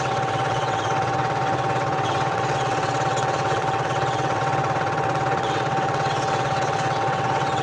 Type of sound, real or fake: fake